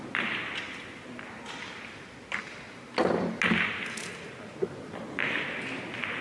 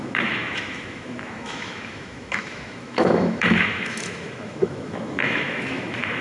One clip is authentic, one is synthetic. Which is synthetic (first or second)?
second